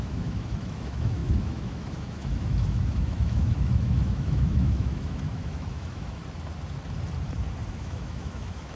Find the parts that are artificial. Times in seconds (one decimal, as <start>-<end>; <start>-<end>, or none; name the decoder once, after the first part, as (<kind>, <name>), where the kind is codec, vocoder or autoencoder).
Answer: 0.0-6.2 (autoencoder, DAC-VAE); 7.7-8.8